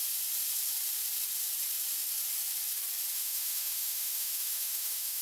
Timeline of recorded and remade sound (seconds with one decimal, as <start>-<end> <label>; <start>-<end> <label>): 0.0-3.1 recorded; 3.1-5.2 remade